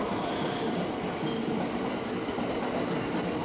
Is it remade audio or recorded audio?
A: recorded